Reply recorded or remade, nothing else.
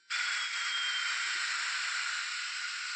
recorded